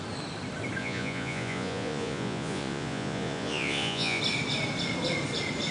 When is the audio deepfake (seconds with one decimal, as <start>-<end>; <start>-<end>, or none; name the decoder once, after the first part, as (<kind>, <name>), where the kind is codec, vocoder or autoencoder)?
0.8-4.2 (vocoder, Vocos)